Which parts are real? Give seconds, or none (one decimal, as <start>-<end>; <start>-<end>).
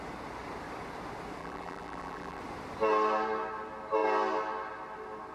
0.0-1.4; 2.4-5.3